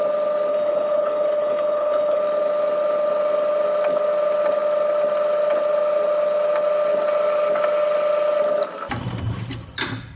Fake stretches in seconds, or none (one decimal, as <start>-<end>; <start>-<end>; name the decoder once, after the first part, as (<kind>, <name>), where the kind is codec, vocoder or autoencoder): 0.5-2.2 (codec, HILCodec)